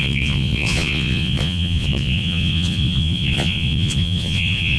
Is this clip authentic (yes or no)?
no